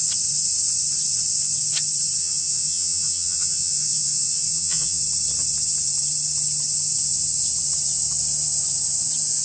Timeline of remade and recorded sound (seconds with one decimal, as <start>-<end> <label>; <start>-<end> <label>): 0.0-2.2 recorded; 2.2-5.0 remade; 5.0-9.4 recorded